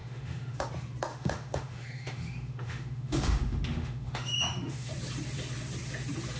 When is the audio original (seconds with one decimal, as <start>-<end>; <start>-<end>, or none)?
0.7-1.1; 4.9-6.4

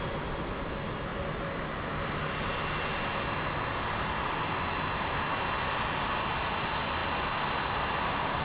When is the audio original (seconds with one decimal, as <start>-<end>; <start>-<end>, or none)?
0.0-8.4

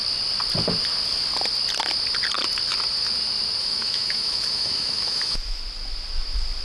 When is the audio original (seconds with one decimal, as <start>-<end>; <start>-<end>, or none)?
0.0-3.6; 5.6-6.6

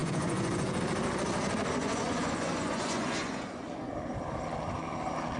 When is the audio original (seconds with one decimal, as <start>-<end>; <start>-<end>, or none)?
0.8-1.8; 3.9-5.4

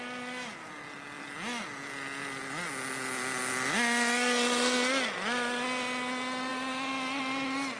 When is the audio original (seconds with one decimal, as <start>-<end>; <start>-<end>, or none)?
0.0-7.8

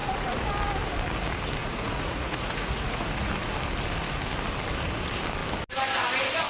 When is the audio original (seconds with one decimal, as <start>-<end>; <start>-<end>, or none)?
0.5-1.6; 3.3-6.5

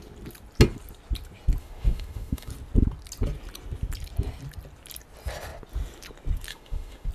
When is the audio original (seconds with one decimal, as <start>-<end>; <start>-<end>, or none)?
0.0-1.6; 2.5-6.5